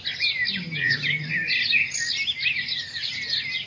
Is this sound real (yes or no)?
yes